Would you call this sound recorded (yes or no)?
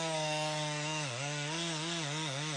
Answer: no